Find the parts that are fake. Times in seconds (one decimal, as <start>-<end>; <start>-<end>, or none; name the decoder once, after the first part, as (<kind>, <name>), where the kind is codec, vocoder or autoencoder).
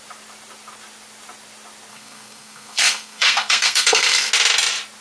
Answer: 1.9-4.3 (codec, SNAC)